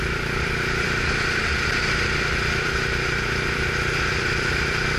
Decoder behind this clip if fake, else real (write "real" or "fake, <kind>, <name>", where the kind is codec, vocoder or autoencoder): fake, vocoder, BigVGAN v2